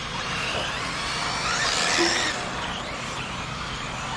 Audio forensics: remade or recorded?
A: recorded